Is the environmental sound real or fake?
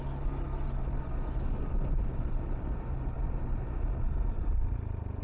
real